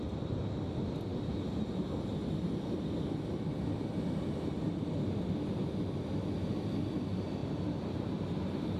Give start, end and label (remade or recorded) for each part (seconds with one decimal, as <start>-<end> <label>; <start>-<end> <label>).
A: 0.0-8.8 recorded